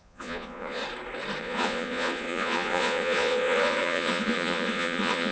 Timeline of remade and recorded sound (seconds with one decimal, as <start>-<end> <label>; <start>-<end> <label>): 0.0-0.8 remade; 0.8-1.4 recorded; 1.4-5.3 remade